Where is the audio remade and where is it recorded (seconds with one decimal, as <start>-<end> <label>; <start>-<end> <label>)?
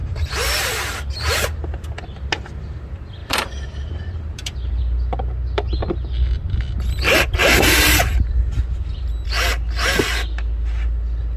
0.0-1.6 remade; 1.6-3.2 recorded; 3.2-4.8 remade; 4.8-7.4 recorded; 7.4-9.0 remade; 9.0-11.4 recorded